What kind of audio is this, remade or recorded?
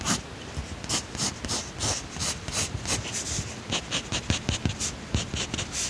recorded